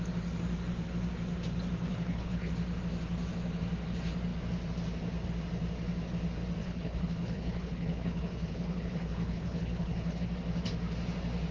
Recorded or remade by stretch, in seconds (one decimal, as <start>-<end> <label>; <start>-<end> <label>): 0.0-1.9 recorded; 1.9-2.5 remade; 2.5-6.6 recorded; 6.6-10.3 remade; 10.3-11.5 recorded